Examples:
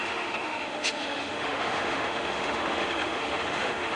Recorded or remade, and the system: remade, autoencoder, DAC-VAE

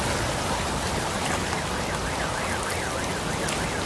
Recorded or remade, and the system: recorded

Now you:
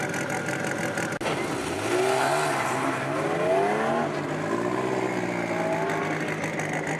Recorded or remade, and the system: recorded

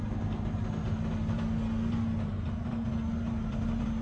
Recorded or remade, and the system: recorded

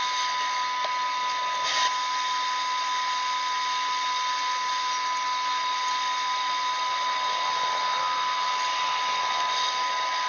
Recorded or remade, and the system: recorded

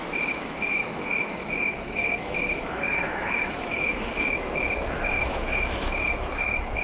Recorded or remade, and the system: remade, autoencoder, DAC-VAE